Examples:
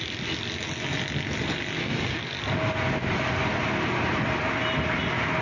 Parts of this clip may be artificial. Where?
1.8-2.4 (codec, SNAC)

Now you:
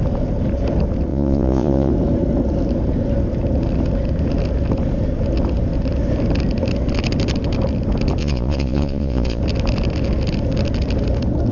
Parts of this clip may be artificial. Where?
1.1-1.9 (vocoder, Vocos); 8.2-9.4